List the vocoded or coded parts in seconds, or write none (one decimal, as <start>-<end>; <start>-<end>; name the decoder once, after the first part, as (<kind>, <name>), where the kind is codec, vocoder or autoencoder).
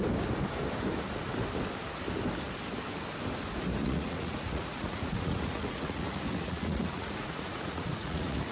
3.8-8.5 (vocoder, Vocos)